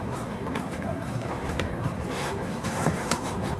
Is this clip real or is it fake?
fake